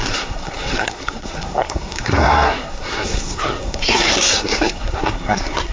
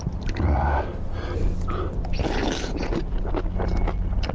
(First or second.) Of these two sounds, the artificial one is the first